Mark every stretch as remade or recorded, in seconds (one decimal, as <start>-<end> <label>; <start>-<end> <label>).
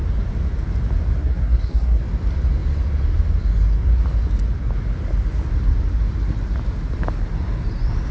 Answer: 0.0-1.2 recorded; 1.2-2.0 remade; 2.0-8.1 recorded